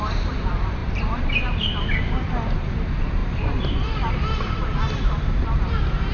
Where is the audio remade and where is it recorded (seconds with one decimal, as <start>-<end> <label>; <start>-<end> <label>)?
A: 0.0-6.1 remade